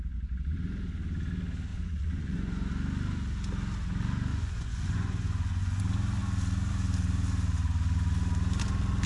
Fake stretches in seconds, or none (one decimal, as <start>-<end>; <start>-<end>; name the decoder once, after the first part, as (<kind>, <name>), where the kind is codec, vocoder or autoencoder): 1.7-2.7 (vocoder, Vocos); 4.3-5.8